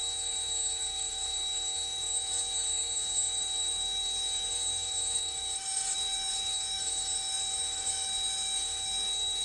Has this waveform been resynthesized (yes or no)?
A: yes